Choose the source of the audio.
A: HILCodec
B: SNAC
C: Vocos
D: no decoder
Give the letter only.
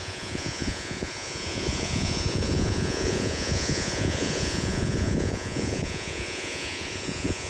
C